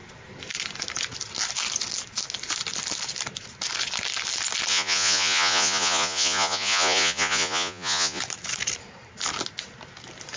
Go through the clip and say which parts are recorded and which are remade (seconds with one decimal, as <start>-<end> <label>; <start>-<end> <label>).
0.0-4.7 recorded; 4.7-8.2 remade; 8.2-10.4 recorded

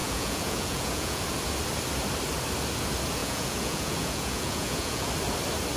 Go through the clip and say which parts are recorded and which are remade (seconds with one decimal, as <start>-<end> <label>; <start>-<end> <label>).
0.0-1.2 remade; 1.2-3.2 recorded; 3.2-5.1 remade; 5.1-5.8 recorded

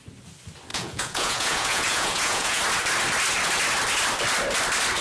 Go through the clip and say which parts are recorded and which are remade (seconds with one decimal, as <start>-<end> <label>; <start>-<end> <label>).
0.0-0.7 recorded; 0.7-2.6 remade; 2.6-5.0 recorded